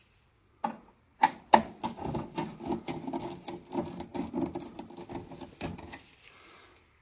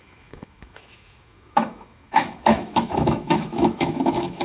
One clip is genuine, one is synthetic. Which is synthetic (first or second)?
second